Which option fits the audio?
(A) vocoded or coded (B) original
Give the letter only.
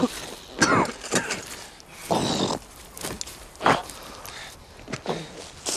B